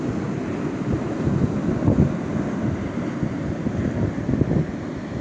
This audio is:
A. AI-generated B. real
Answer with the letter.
B